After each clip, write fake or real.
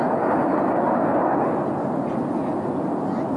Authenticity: real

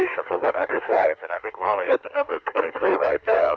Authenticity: fake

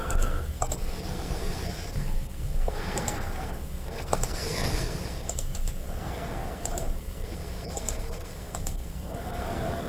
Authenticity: fake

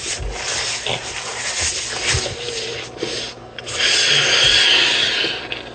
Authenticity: real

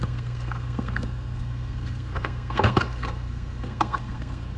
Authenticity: fake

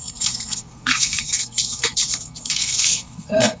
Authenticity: fake